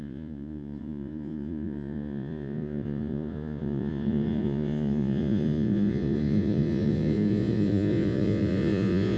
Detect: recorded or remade remade